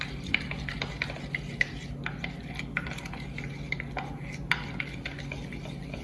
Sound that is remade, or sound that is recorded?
recorded